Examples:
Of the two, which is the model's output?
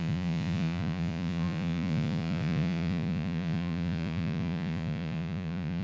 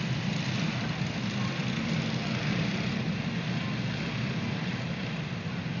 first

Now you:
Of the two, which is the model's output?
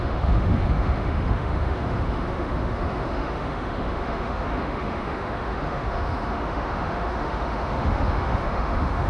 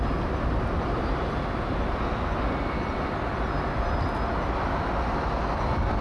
first